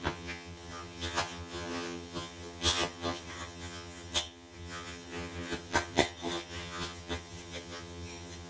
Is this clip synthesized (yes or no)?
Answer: yes